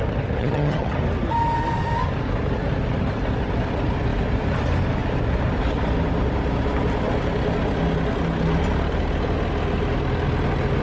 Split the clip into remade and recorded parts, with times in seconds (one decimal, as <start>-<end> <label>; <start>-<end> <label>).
0.0-0.4 recorded; 0.4-1.0 remade; 1.0-10.8 recorded